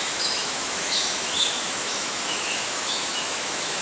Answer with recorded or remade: remade